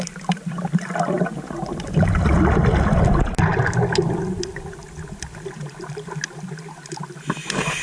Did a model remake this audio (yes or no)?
no